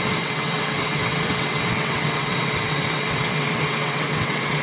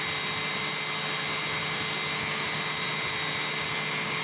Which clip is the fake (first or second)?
first